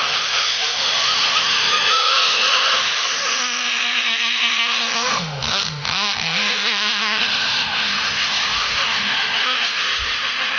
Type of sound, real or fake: fake